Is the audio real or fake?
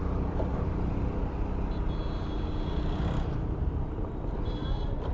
real